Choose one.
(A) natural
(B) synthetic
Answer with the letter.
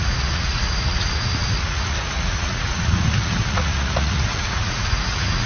B